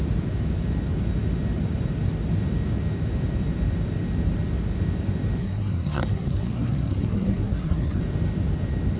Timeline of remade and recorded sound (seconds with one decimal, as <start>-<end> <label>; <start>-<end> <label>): 0.0-5.4 recorded; 5.4-8.0 remade; 8.0-9.0 recorded